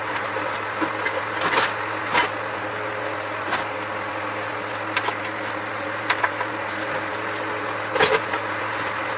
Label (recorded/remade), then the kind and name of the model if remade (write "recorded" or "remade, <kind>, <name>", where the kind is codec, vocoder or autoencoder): recorded